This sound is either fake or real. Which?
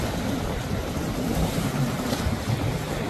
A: real